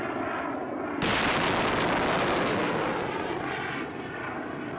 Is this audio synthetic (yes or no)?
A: no